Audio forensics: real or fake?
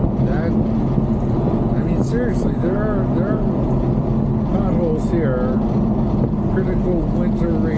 real